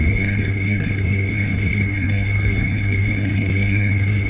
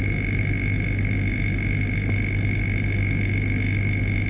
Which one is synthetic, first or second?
first